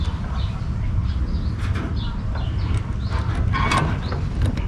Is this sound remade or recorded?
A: recorded